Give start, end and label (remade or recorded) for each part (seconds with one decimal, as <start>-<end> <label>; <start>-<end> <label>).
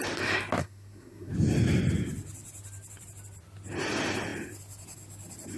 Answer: 0.0-0.6 recorded; 0.6-1.3 remade; 1.3-5.6 recorded